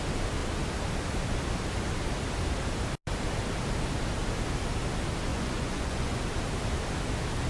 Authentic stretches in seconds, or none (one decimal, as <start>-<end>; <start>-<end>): 0.0-5.3; 6.2-7.5